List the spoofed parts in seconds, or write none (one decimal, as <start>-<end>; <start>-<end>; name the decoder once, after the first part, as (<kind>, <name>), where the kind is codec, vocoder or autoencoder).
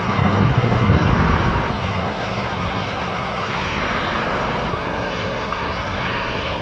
0.0-1.1 (codec, SNAC); 1.7-3.8; 4.7-6.6